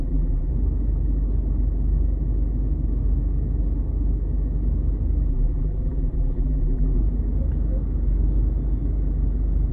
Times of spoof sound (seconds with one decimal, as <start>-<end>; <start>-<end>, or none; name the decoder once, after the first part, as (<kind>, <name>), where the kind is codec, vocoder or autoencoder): 0.0-0.5 (vocoder, BigVGAN v2); 5.3-7.0